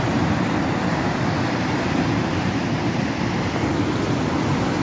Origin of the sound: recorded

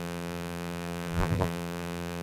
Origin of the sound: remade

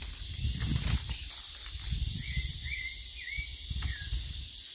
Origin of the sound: recorded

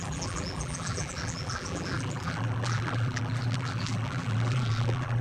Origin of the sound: remade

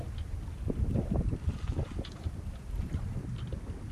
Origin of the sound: recorded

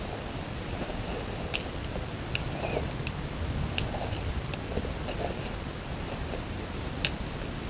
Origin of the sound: recorded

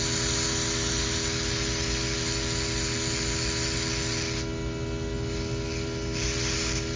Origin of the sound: recorded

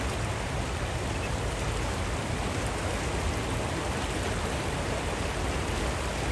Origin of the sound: recorded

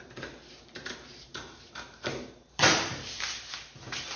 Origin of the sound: remade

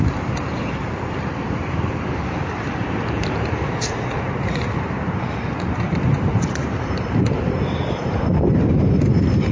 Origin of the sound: remade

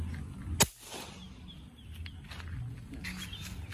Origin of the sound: recorded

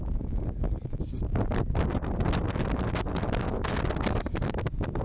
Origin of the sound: recorded